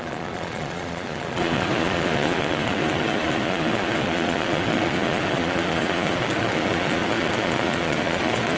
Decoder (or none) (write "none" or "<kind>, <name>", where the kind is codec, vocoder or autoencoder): vocoder, Vocos